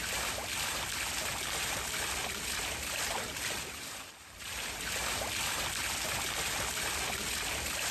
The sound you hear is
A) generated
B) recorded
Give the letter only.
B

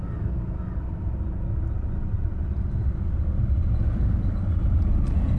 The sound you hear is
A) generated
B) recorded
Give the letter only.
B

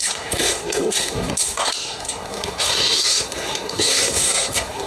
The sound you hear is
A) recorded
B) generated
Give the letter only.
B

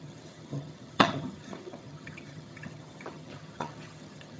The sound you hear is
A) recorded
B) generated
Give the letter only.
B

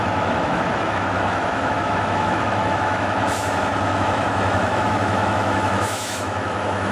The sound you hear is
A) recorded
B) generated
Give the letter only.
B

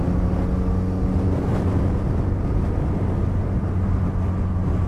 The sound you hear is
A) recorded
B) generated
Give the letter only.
A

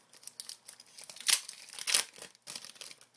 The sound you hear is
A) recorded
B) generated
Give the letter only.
A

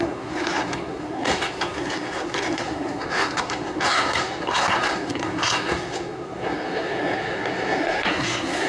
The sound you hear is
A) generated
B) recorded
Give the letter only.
A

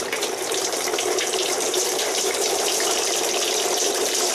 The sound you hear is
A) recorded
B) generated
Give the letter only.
B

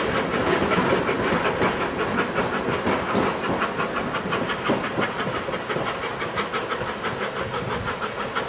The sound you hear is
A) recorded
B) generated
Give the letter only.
A